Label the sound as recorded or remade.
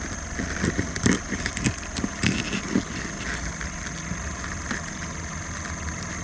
recorded